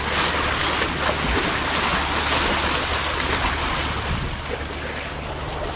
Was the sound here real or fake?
real